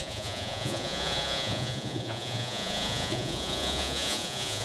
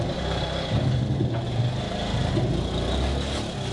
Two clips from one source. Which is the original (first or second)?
second